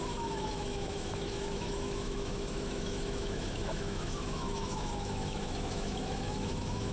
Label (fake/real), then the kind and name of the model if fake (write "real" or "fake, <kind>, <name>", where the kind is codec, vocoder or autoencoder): fake, autoencoder, DAC-VAE